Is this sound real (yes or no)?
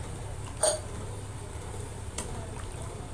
no